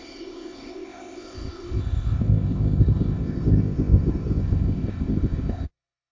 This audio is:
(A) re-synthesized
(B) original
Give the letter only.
A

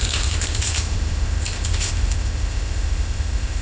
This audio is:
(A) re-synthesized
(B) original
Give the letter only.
A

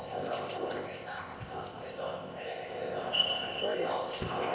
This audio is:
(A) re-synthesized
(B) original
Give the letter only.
A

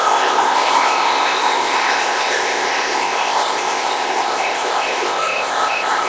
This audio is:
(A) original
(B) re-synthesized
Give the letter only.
B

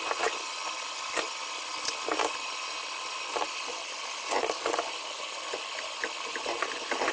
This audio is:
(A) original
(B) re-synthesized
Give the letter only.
A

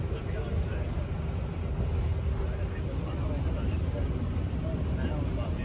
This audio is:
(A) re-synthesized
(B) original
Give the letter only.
B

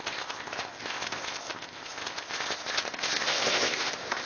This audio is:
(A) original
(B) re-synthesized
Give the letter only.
B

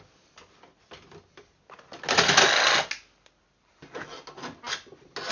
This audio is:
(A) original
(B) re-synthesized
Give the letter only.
A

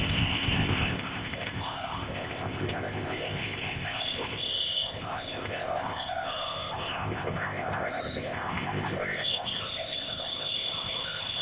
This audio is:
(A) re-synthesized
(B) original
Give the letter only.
A